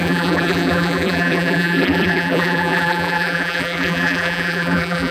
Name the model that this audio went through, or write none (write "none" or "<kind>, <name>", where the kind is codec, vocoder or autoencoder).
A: vocoder, BigVGAN v2